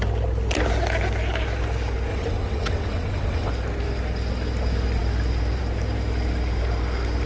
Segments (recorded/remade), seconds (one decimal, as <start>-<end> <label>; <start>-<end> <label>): 0.0-2.1 recorded; 2.1-3.5 remade; 3.5-7.3 recorded